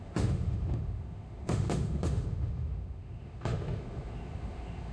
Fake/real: fake